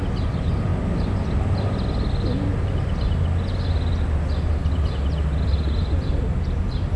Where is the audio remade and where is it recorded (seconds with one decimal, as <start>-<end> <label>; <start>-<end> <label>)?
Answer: 0.0-7.0 recorded